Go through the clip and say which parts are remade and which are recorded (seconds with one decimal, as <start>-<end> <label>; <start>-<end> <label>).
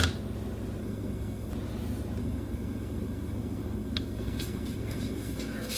0.0-0.8 recorded; 0.8-1.5 remade; 1.5-2.2 recorded; 2.2-5.8 remade